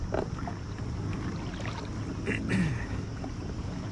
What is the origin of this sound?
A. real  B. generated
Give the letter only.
A